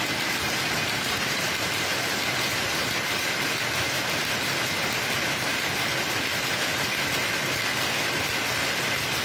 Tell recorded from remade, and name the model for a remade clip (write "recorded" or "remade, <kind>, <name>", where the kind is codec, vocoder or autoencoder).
recorded